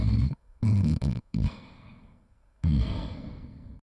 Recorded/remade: remade